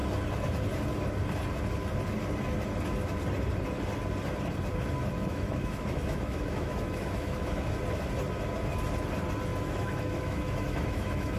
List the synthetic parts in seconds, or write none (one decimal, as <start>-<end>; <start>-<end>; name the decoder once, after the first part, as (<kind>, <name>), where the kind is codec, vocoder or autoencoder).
5.2-7.7 (autoencoder, DAC-VAE); 9.5-11.4

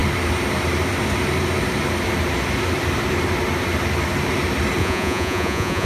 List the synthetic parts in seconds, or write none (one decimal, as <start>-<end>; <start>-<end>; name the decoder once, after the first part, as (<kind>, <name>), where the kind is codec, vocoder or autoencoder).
4.8-5.9 (vocoder, Vocos)